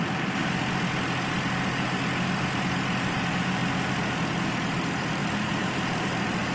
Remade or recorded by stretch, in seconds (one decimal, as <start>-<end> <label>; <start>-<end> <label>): 0.0-0.4 remade; 0.4-3.1 recorded; 3.1-3.6 remade; 3.6-4.3 recorded; 4.3-6.5 remade